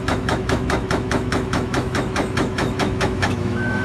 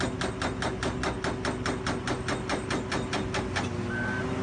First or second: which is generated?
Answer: first